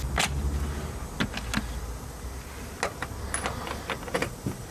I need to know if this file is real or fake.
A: real